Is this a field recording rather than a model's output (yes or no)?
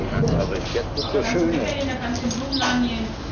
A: yes